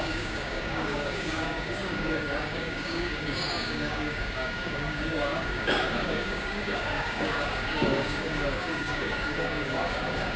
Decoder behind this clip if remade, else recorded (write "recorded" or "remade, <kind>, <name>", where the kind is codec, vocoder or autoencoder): remade, codec, DAC